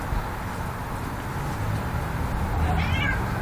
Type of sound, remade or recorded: recorded